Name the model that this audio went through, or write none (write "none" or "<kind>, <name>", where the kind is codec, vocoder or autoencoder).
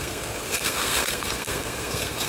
codec, SNAC